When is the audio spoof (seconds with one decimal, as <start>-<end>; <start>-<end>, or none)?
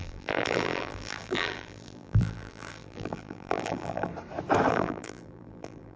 0.0-4.1; 4.7-6.0